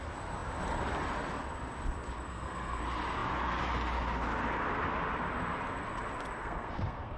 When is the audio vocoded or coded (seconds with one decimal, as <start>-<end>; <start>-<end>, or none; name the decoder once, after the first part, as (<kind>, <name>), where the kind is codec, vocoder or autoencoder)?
2.3-2.8 (codec, SNAC); 6.4-7.2